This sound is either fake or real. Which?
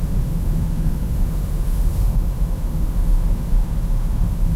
fake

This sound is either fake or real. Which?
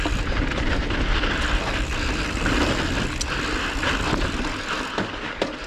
real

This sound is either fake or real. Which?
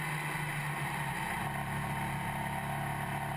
real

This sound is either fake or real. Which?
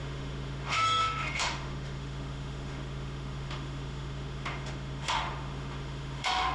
fake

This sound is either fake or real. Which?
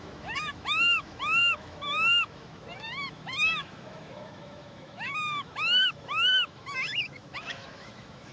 fake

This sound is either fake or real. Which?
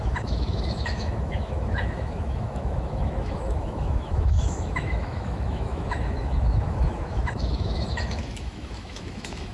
fake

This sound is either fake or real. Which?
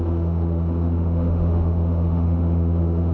fake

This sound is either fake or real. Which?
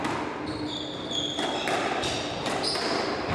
real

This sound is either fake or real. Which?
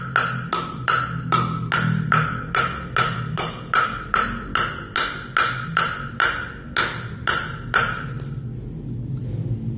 real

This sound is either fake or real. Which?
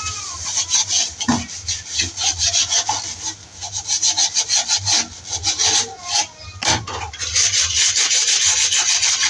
real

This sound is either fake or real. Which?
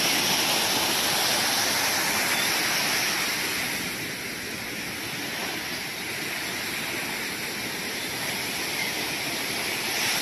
real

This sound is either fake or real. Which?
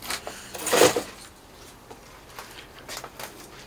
real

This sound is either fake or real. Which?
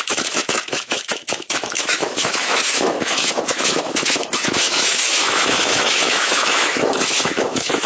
fake